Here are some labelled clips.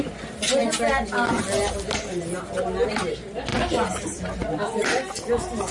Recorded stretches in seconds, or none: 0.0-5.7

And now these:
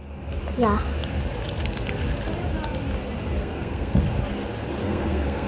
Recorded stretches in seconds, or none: 0.0-3.4; 4.0-4.8

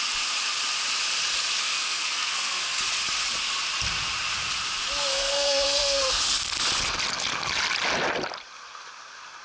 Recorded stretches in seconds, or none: 0.0-1.6; 2.8-5.1; 6.2-9.4

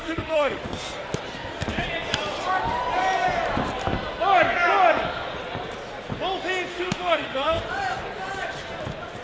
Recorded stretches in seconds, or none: 0.6-6.7; 7.6-9.2

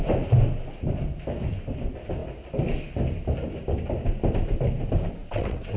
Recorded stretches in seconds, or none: 0.0-5.2

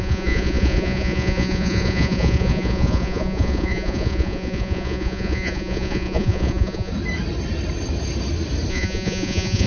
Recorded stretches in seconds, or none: 6.9-8.7

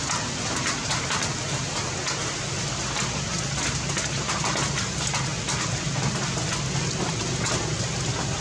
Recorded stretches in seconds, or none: 0.0-8.4